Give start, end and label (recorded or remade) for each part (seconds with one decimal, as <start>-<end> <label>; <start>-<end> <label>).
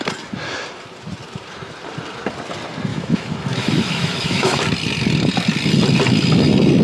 0.0-2.9 recorded; 2.9-4.6 remade; 4.6-6.8 recorded